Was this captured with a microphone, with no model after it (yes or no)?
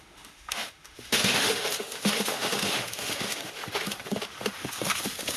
no